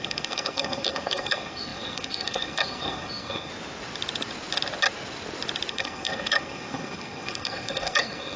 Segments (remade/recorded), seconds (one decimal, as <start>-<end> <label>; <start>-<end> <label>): 0.0-3.5 remade; 3.5-5.7 recorded; 5.7-8.4 remade